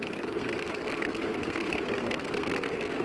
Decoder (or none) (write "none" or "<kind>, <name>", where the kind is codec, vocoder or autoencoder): codec, SNAC